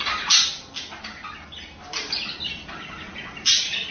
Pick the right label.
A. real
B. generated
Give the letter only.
A